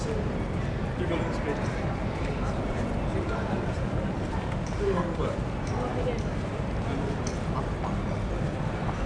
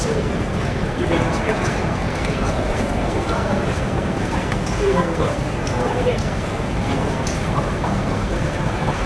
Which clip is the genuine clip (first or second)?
first